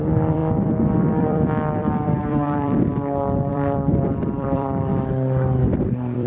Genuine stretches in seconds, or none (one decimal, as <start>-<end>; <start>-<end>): 0.4-1.1; 2.9-3.5; 4.9-5.6